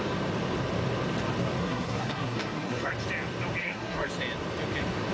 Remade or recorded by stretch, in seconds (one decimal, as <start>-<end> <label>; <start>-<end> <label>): 0.0-1.6 recorded; 1.6-2.9 remade; 2.9-3.6 recorded; 3.6-4.1 remade; 4.1-5.1 recorded